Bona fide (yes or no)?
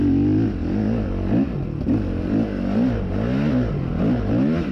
yes